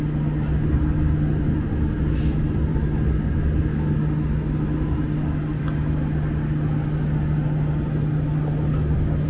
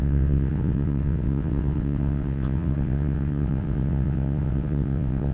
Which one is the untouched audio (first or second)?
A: first